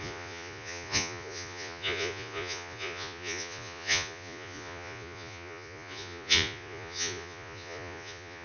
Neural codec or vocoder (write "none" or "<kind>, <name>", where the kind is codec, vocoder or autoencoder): vocoder, Vocos